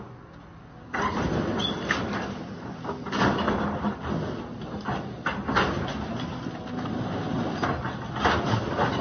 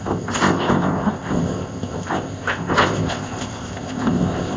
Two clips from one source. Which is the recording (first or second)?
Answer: first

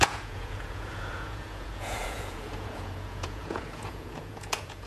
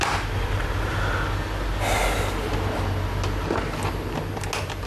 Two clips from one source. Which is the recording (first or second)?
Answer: second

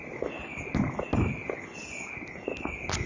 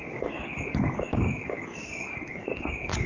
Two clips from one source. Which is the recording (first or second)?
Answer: first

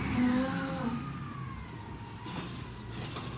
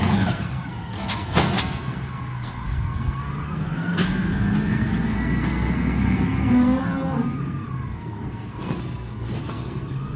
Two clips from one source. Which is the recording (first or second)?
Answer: first